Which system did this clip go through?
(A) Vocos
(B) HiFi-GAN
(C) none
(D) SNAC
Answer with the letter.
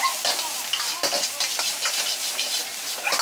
C